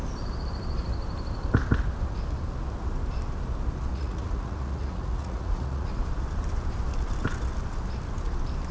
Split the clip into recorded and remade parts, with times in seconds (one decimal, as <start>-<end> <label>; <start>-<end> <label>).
0.0-3.9 recorded; 3.9-5.9 remade; 5.9-8.7 recorded